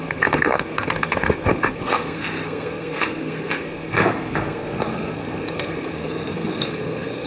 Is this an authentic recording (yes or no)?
no